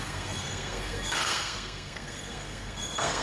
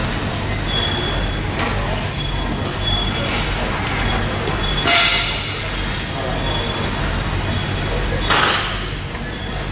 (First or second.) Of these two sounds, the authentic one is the second